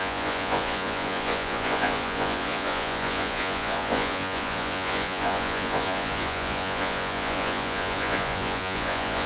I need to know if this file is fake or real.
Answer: fake